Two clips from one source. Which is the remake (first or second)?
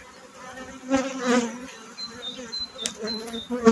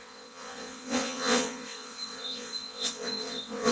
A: second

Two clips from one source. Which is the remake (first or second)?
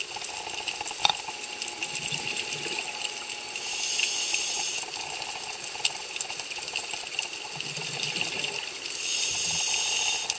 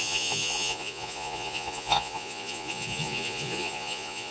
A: second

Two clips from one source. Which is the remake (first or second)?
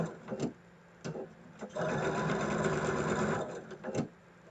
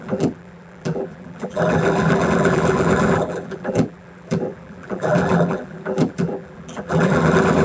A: second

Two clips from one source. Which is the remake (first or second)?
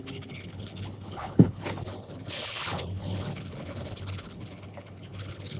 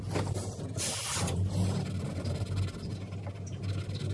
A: first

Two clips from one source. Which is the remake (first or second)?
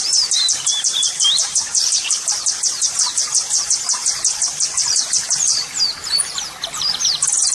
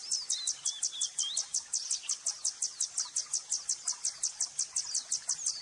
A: first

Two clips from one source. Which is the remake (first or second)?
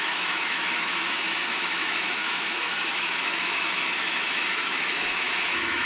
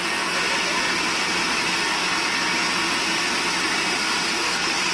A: first